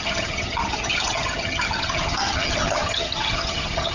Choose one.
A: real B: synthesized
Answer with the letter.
B